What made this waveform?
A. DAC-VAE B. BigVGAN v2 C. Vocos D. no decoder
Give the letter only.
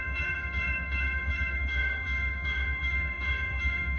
A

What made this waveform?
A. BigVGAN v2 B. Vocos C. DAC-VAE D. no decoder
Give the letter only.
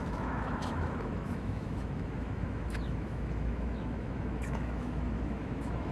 C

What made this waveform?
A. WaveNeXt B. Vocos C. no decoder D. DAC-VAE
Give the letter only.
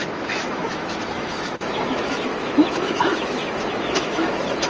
D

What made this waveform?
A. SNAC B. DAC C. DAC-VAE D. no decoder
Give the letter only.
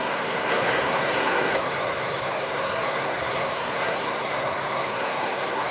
A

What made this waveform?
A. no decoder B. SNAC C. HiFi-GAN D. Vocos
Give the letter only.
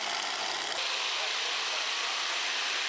A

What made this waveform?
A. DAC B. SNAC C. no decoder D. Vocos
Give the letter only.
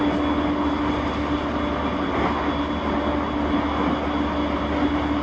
C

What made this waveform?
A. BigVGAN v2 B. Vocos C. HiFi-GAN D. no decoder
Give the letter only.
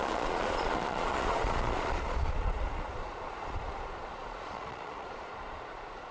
B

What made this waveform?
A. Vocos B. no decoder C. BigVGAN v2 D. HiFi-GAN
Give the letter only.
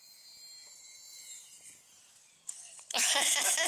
B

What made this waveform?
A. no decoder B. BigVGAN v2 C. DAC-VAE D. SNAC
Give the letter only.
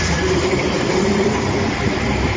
B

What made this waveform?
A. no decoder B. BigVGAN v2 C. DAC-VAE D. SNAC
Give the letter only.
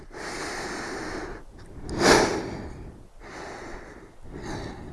A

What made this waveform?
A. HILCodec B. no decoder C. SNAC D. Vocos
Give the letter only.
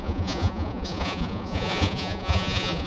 D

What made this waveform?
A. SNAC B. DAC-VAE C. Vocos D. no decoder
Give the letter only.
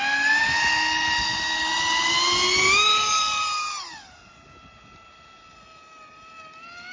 D